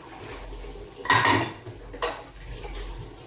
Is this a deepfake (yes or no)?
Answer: no